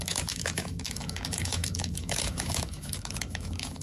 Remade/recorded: remade